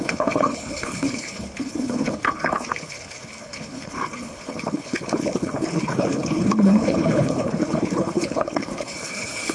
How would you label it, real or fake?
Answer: fake